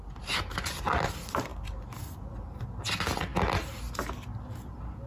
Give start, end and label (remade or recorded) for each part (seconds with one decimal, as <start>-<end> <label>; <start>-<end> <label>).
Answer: 0.0-5.1 recorded